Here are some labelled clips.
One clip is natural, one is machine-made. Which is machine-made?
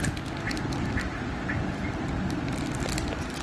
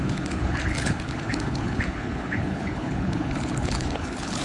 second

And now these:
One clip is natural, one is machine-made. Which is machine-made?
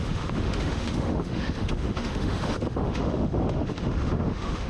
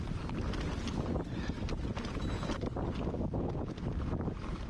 first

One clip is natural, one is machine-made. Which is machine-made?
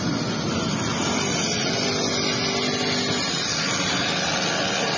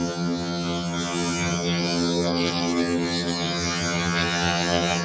second